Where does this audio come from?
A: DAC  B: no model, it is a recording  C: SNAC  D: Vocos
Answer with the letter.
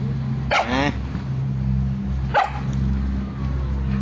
B